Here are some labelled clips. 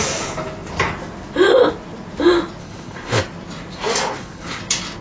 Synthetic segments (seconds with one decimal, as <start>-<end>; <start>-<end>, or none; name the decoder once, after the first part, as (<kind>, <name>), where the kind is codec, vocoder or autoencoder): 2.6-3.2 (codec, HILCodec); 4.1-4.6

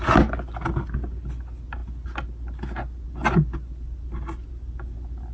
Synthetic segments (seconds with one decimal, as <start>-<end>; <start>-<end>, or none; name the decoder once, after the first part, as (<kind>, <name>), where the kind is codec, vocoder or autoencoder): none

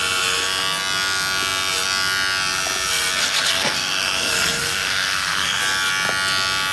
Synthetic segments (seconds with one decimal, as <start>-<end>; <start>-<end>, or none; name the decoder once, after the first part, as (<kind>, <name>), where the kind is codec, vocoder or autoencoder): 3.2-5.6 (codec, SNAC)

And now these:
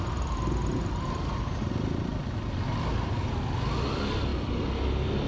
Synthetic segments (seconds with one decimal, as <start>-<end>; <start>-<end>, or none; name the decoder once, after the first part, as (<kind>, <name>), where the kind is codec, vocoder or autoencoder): none

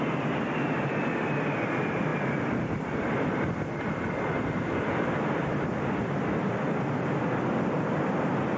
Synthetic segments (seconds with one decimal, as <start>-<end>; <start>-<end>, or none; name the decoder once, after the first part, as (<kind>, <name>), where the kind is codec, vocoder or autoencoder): none

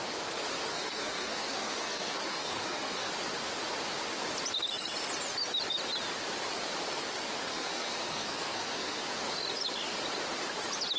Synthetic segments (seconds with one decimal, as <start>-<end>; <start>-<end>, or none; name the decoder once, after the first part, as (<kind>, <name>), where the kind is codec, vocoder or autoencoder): 0.7-3.1 (codec, SNAC); 7.5-9.0

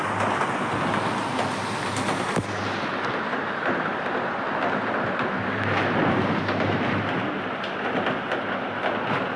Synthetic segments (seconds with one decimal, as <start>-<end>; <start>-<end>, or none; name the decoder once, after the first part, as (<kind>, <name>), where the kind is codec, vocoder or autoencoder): none